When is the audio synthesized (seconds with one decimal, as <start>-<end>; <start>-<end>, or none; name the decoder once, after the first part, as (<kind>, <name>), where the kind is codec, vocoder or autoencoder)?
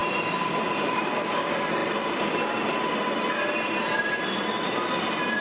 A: 0.0-1.1 (vocoder, BigVGAN v2)